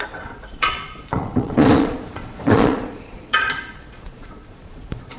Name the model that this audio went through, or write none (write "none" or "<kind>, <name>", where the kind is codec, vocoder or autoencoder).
vocoder, Vocos